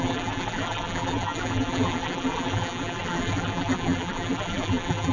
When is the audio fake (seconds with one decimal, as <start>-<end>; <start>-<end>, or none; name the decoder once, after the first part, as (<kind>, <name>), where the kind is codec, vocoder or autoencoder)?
0.0-5.1 (vocoder, BigVGAN v2)